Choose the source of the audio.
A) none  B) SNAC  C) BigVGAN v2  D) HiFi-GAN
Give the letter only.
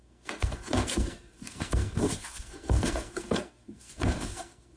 B